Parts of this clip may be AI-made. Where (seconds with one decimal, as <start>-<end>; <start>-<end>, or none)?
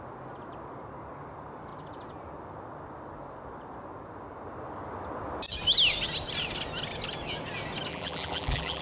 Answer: 7.9-8.8